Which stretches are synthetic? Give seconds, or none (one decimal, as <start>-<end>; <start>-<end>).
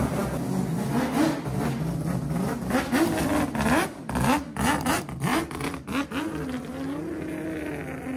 none